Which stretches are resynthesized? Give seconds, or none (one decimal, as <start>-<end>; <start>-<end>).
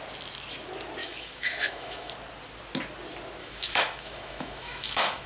1.0-2.1; 3.4-5.3